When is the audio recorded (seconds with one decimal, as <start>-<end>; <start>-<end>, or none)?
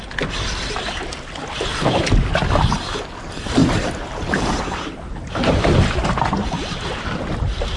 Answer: 0.0-1.7; 2.3-3.6; 7.2-7.8